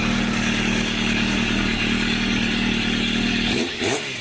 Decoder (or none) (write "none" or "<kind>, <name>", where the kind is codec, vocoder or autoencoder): codec, DAC